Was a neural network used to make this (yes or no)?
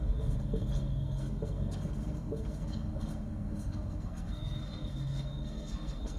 yes